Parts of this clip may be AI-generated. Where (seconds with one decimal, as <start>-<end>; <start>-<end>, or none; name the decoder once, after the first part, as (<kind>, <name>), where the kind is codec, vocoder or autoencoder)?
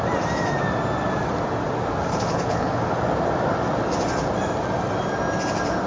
2.1-2.8 (codec, HILCodec)